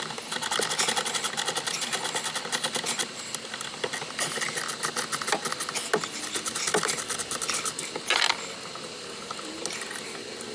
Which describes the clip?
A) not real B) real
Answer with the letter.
B